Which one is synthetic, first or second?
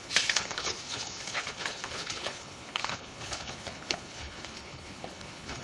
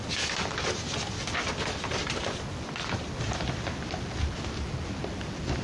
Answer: first